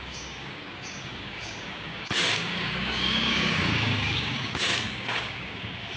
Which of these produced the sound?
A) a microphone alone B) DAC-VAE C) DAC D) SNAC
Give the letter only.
C